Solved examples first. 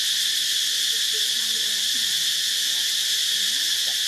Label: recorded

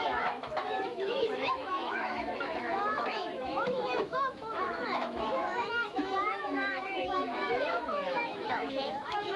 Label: remade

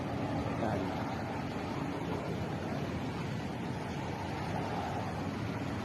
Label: recorded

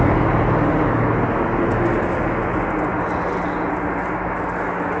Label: recorded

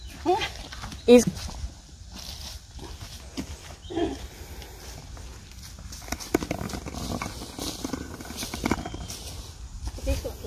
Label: recorded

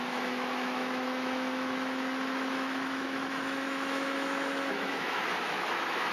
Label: remade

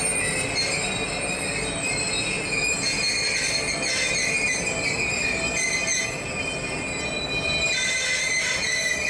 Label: recorded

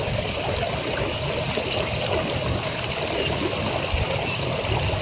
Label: recorded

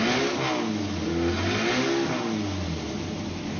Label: recorded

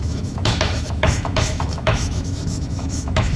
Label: remade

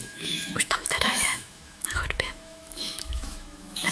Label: remade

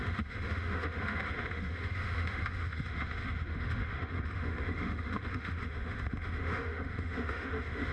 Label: remade